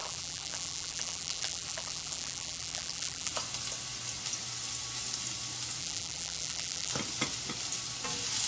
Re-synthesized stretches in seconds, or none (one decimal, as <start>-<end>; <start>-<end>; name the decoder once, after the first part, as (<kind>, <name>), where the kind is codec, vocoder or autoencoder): 0.0-3.3 (vocoder, BigVGAN v2); 5.8-6.9